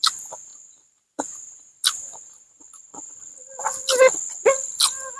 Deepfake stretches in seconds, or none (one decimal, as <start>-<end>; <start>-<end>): none